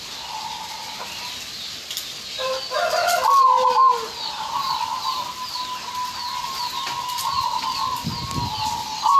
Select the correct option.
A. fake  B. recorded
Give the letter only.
B